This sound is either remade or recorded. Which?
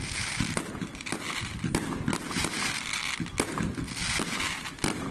recorded